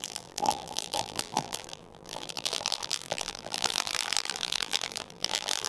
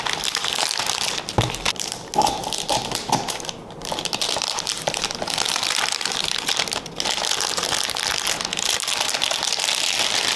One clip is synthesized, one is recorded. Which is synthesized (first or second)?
first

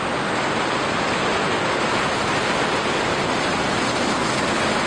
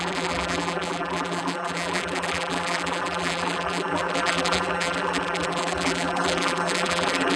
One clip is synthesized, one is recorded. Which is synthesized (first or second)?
second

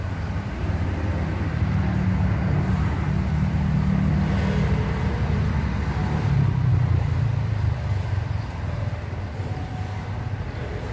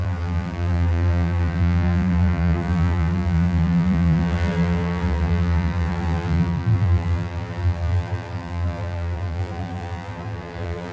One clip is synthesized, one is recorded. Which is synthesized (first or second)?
second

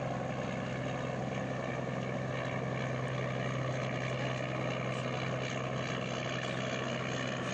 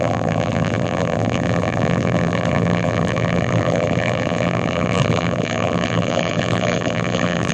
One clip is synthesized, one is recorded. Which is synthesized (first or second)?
second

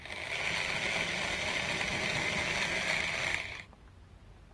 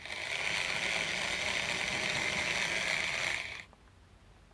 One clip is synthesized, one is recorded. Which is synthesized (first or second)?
first